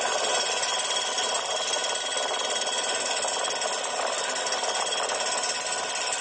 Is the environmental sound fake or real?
real